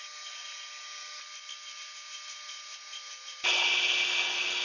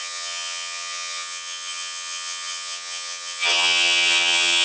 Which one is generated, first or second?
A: second